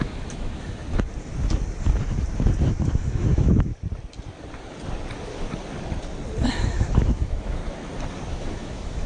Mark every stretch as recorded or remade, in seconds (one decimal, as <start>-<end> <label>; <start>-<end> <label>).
0.0-0.8 remade; 0.8-2.7 recorded; 2.7-3.7 remade; 3.7-6.7 recorded; 6.7-7.6 remade; 7.6-8.3 recorded; 8.3-9.1 remade